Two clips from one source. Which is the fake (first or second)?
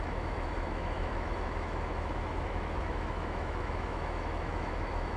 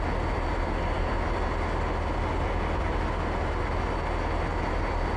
first